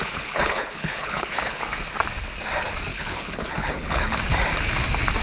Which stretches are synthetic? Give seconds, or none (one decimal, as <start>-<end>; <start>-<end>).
0.0-1.8; 2.9-4.2